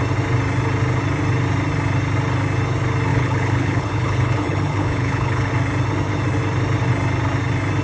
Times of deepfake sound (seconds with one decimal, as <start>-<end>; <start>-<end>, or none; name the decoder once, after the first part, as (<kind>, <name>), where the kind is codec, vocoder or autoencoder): 3.1-5.5 (codec, HILCodec)